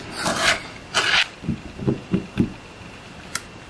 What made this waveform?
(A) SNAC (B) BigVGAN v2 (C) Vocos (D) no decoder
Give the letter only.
D